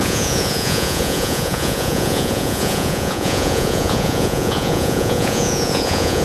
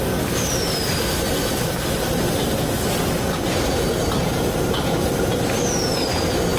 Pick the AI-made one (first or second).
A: first